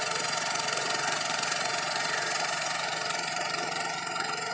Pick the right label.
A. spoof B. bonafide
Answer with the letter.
A